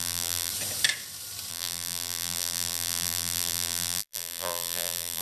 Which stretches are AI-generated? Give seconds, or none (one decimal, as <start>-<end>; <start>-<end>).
0.0-0.5; 1.5-5.2